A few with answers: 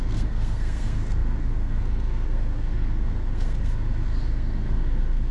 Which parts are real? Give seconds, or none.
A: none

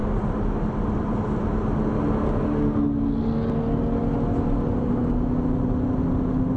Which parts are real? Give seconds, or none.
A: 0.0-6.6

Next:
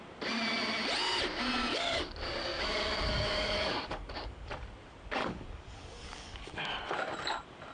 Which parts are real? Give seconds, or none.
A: 0.0-1.7; 4.5-5.2; 6.6-7.7

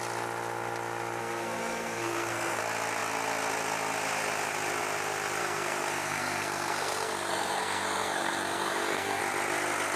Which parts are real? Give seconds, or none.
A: 0.0-1.2; 2.6-5.4; 9.2-10.0

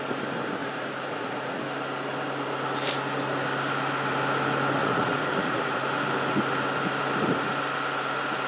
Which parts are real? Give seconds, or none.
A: 0.0-0.6; 1.6-4.8; 5.9-8.5